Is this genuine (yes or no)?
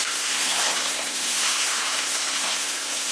no